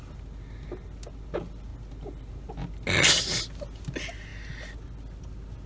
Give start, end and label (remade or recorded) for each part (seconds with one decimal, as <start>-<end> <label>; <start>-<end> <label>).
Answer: 0.0-5.7 recorded